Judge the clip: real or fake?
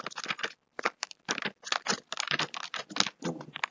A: real